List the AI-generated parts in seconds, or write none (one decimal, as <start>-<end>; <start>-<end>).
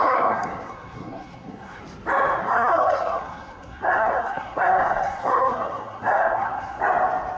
0.0-1.8; 2.4-6.8